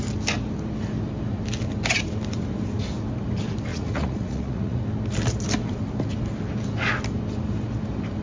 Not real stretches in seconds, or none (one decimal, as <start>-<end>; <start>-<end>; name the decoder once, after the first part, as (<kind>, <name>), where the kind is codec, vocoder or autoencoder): 3.7-4.8 (vocoder, Vocos)